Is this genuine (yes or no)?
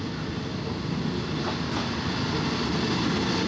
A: yes